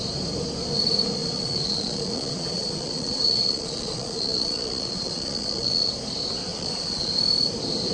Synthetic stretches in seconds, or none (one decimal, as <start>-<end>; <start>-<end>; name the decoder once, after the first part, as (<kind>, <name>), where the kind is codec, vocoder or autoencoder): 1.2-5.9 (vocoder, Vocos); 6.5-7.1